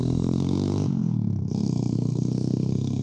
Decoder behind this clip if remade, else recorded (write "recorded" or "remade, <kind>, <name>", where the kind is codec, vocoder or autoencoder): remade, codec, SNAC